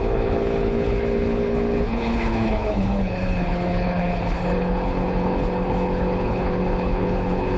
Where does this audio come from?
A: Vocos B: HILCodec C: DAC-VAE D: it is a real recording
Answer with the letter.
B